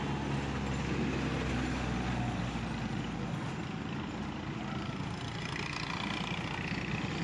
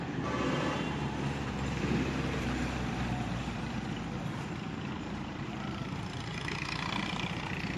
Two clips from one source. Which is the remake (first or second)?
second